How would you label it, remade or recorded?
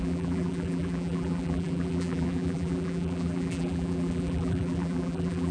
remade